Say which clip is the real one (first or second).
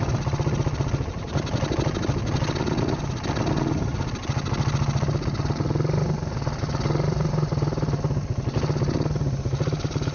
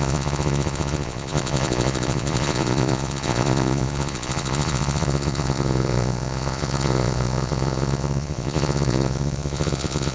first